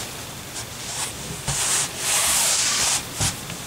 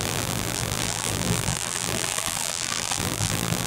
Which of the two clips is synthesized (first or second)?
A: second